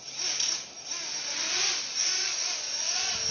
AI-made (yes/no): no